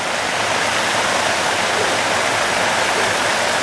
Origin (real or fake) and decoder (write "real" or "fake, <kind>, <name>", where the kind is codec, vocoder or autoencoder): real